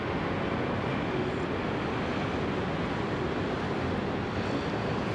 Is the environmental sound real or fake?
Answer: real